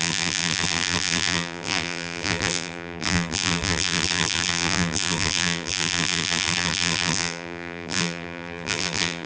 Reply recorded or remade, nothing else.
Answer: remade